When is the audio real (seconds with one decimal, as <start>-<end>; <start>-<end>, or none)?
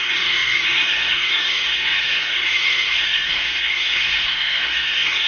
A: none